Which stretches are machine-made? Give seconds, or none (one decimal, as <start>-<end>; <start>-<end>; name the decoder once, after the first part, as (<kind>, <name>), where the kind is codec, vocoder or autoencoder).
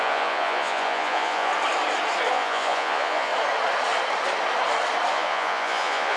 0.0-1.5 (vocoder, Vocos); 2.3-3.3; 5.1-6.2